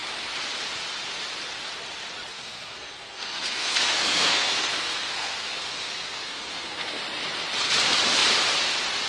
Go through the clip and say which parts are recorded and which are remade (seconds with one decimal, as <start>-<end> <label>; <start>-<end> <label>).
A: 0.0-2.3 recorded; 2.3-7.0 remade; 7.0-9.1 recorded